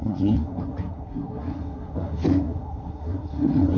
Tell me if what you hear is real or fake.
fake